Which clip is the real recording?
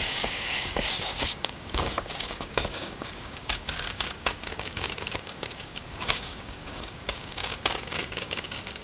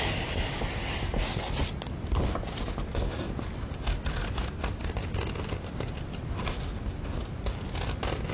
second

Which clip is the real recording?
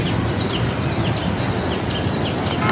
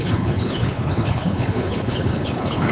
first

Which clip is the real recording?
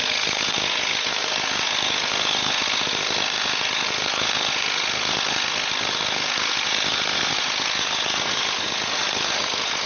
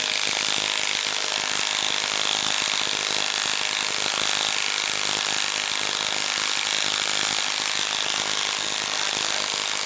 second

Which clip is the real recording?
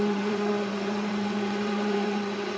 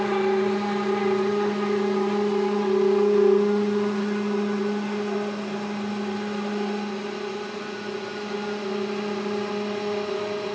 second